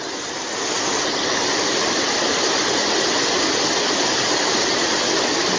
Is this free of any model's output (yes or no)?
yes